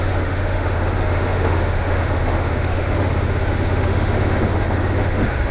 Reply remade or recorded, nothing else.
remade